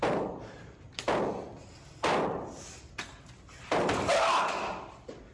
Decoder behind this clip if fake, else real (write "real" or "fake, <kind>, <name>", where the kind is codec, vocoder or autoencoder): fake, vocoder, BigVGAN v2